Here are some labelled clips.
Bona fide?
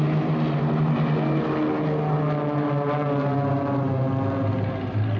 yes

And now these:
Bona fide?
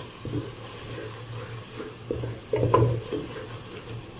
yes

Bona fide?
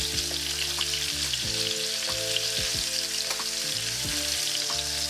yes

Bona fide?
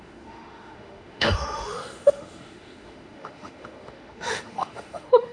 no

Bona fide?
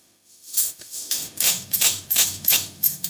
no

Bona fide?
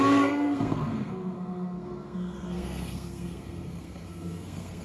no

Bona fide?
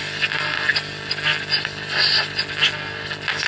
yes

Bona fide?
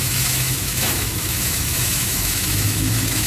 no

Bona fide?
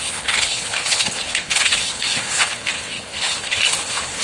no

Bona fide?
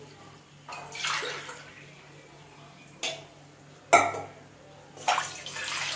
yes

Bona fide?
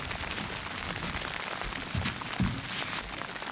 yes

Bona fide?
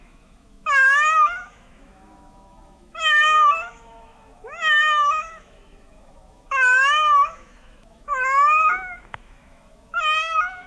no